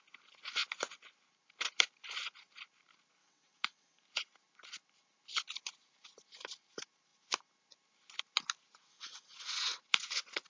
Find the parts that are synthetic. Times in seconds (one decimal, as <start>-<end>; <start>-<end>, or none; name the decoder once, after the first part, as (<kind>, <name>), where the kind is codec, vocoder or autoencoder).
3.2-4.0 (vocoder, WaveNeXt); 8.9-9.8

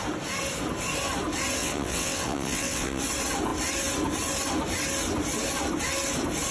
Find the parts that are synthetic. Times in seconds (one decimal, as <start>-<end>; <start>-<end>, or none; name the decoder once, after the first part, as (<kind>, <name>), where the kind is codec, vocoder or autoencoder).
1.6-3.0 (vocoder, WaveNeXt)